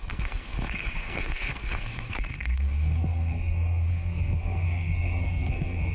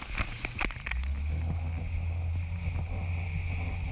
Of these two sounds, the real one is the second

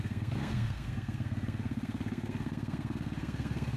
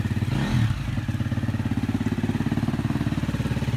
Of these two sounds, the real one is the second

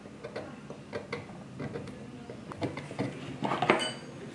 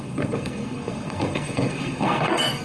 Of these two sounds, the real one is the first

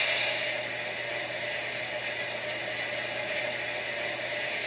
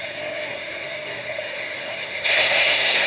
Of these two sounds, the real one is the first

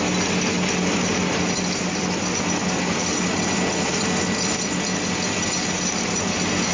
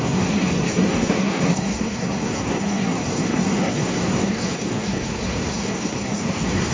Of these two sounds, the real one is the first